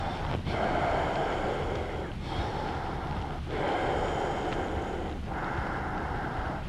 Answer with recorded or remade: recorded